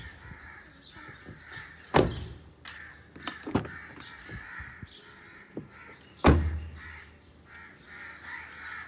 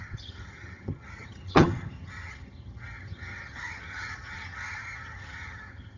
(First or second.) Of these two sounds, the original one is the first